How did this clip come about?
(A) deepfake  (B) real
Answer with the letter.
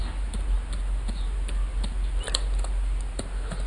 B